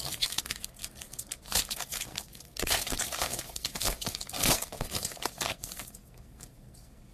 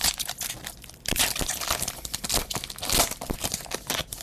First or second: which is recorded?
second